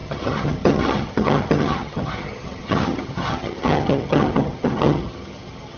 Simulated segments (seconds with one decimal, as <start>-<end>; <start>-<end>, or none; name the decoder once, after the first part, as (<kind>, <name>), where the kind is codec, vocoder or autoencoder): 0.0-5.8 (vocoder, HiFi-GAN)